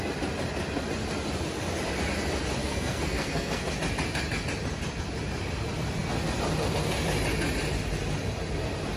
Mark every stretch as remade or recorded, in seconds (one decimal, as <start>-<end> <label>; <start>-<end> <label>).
0.0-2.6 recorded; 2.6-3.7 remade; 3.7-9.0 recorded